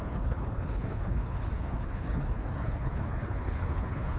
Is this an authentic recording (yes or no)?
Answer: no